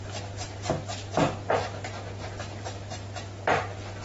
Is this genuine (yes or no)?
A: yes